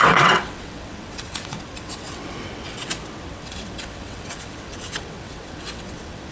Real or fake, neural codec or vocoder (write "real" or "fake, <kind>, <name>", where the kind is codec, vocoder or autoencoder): fake, vocoder, WaveNeXt